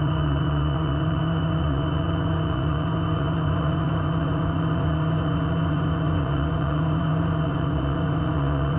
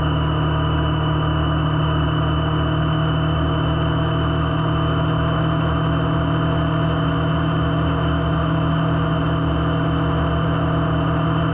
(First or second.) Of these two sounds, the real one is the second